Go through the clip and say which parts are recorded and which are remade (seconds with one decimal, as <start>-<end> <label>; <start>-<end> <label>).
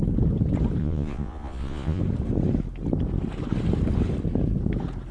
0.0-0.8 recorded; 0.8-2.0 remade; 2.0-5.1 recorded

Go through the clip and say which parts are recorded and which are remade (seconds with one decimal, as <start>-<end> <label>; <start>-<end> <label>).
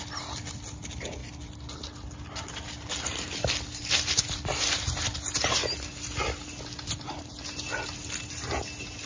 0.0-9.1 recorded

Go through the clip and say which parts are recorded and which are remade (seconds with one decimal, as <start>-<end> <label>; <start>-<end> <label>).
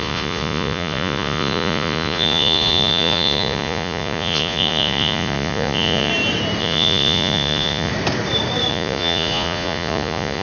0.0-6.1 remade; 6.1-6.6 recorded; 6.6-7.9 remade; 7.9-8.7 recorded; 8.7-10.4 remade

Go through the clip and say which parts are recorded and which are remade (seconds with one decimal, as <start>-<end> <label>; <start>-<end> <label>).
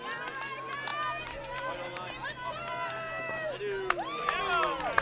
0.0-5.0 recorded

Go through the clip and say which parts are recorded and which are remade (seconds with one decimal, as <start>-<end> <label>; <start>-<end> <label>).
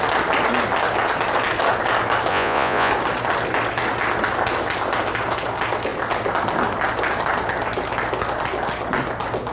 0.0-2.3 recorded; 2.3-2.9 remade; 2.9-9.5 recorded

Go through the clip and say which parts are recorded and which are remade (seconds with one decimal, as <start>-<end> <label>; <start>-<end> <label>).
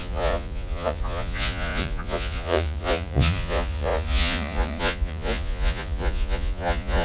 0.0-7.0 remade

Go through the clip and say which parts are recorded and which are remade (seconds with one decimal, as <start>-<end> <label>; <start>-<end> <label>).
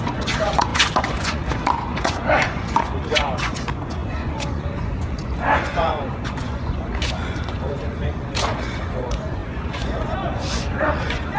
0.0-11.4 remade